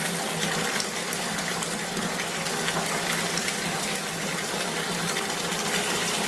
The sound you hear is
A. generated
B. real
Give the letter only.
B